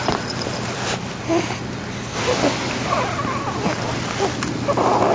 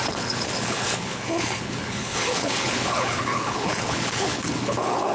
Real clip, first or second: first